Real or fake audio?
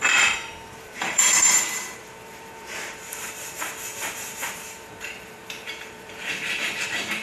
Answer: fake